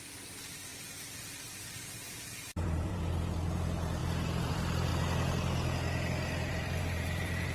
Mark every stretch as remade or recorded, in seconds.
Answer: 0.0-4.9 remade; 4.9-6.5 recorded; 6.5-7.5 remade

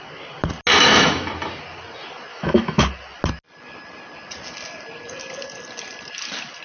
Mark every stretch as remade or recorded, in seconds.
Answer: 0.0-0.7 recorded; 0.7-1.3 remade; 1.3-2.3 recorded; 2.3-2.8 remade; 2.8-6.6 recorded